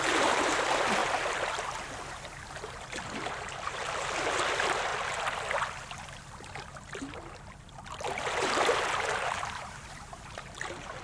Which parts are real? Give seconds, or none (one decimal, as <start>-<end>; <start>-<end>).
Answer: 1.0-2.1; 4.9-6.5